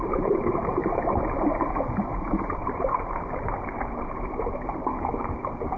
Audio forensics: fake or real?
fake